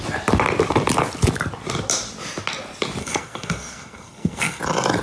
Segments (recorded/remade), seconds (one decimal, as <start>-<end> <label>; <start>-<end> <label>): 0.0-3.0 recorded; 3.0-4.6 remade; 4.6-5.0 recorded

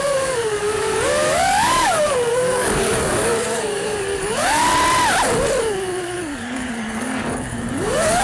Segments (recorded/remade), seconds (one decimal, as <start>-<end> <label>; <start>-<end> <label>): 0.0-4.7 remade; 4.7-5.6 recorded; 5.6-8.2 remade

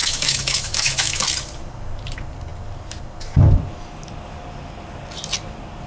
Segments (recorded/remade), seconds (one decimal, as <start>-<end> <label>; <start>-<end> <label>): 0.0-1.2 remade; 1.2-5.9 recorded

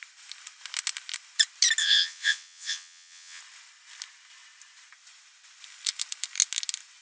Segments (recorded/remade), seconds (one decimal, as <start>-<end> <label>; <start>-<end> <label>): 0.0-1.8 recorded; 1.8-3.4 remade; 3.4-7.0 recorded

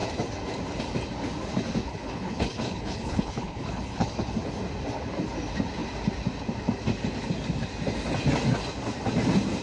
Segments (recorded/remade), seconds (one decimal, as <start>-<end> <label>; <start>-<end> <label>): 0.0-1.9 recorded; 1.9-4.3 remade; 4.3-9.6 recorded

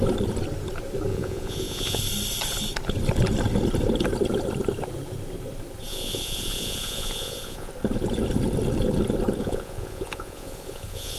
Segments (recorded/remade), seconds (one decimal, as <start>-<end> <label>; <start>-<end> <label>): 0.0-1.1 recorded; 1.1-2.0 remade; 2.0-5.9 recorded; 5.9-7.7 remade; 7.7-9.4 recorded; 9.4-11.2 remade

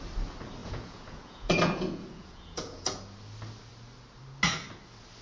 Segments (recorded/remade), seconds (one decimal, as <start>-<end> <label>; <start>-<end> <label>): 0.0-0.6 recorded; 0.6-3.0 remade; 3.0-5.2 recorded